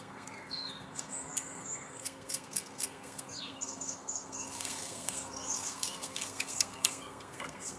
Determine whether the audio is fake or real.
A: fake